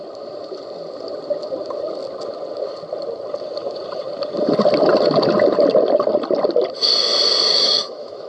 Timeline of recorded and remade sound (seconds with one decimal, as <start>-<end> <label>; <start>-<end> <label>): 0.0-7.5 recorded; 7.5-8.3 remade